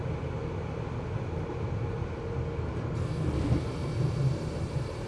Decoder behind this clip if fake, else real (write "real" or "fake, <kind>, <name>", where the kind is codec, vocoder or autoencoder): real